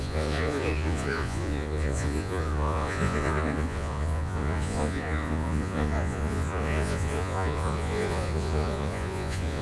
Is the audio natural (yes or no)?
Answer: no